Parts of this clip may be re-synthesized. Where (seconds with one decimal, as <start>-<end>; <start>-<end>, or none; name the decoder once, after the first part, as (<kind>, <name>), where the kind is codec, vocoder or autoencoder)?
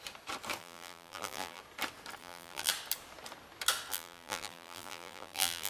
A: 0.6-1.6 (vocoder, BigVGAN v2); 2.2-2.7; 3.9-5.7